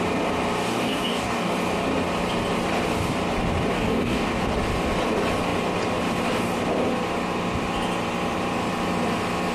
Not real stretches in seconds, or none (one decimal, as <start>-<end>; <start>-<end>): 0.7-1.5; 3.7-4.4